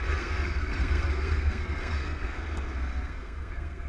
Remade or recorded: remade